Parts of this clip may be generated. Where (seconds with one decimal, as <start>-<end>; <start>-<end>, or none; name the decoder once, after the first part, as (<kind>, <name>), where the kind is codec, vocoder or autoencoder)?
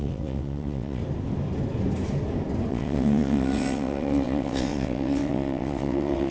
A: 0.0-1.0 (vocoder, WaveNeXt); 2.7-6.3